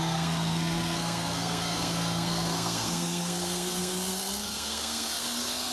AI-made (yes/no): yes